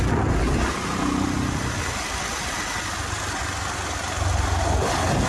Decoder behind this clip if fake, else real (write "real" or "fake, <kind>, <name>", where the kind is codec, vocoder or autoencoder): real